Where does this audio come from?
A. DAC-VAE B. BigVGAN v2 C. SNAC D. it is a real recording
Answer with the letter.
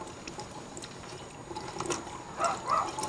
D